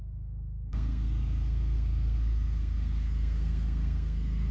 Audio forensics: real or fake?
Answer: fake